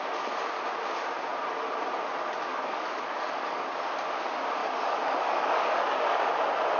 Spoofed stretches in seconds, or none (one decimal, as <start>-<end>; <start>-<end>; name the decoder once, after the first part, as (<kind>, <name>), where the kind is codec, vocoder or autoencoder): 2.5-3.7 (codec, DAC); 4.6-6.3